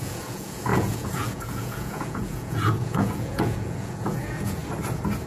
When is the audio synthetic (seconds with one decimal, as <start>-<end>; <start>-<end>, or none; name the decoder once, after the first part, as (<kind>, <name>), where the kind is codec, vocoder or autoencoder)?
0.0-4.6 (vocoder, Vocos)